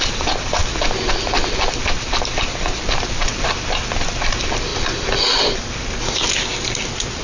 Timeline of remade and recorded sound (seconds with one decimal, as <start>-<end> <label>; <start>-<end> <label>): 0.0-4.7 recorded; 4.7-6.0 remade; 6.0-7.2 recorded